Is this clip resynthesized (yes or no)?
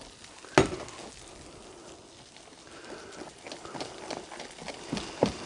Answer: no